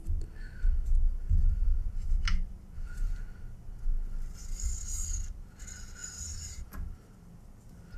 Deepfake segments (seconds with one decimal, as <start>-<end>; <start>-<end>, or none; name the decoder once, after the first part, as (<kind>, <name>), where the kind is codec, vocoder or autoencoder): 6.0-6.7 (vocoder, BigVGAN v2)